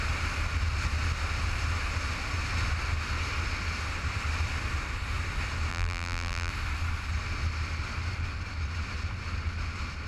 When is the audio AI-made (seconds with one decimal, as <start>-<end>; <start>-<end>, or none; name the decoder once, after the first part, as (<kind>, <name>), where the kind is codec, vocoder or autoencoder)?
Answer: 5.7-6.5 (vocoder, BigVGAN v2)

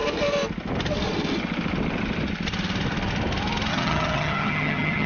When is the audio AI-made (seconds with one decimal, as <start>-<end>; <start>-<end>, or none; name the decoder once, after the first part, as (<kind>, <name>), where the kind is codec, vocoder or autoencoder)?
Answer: 3.7-5.1 (vocoder, HiFi-GAN)